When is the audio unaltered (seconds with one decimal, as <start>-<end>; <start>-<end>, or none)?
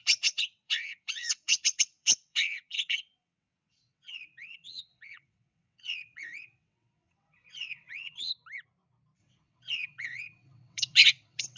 8.3-9.2